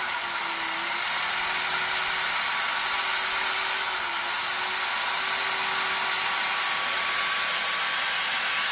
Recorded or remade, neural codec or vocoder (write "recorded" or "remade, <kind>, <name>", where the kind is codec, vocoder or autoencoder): recorded